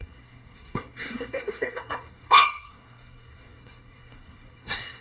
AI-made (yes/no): yes